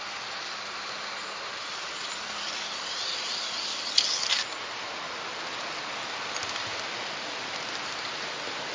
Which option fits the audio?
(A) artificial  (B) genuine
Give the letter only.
B